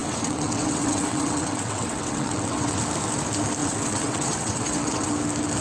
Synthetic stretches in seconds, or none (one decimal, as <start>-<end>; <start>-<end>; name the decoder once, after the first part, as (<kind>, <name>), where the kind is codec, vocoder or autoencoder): 0.0-2.8 (vocoder, WaveNeXt); 3.6-5.1